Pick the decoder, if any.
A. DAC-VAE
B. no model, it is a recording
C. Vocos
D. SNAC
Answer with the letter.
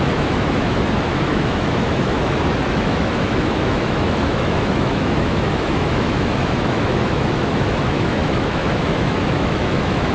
A